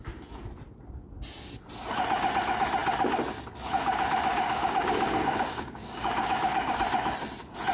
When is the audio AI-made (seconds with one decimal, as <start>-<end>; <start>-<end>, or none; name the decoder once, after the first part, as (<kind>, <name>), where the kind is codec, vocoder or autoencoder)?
4.3-6.8 (codec, DAC)